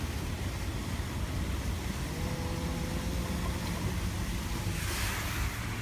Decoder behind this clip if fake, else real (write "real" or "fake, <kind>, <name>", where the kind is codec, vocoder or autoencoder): real